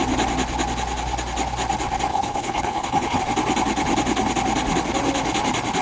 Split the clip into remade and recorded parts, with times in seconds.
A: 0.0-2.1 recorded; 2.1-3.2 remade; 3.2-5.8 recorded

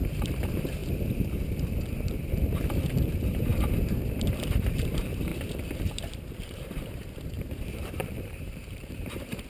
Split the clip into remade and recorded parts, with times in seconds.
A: 0.0-5.3 remade; 5.3-5.9 recorded; 5.9-9.5 remade